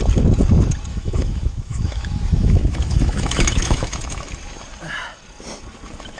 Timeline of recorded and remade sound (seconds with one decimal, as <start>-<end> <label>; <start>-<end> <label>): 0.0-0.9 recorded; 0.9-4.3 remade; 4.3-6.2 recorded